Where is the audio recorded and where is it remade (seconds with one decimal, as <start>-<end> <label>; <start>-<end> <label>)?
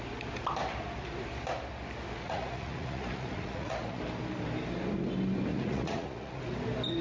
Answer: 0.0-2.2 recorded; 2.2-4.0 remade; 4.0-5.5 recorded; 5.5-6.4 remade; 6.4-7.0 recorded